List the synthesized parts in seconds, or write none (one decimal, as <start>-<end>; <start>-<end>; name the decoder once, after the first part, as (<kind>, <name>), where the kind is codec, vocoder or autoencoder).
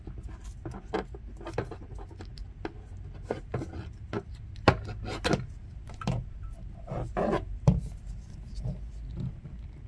none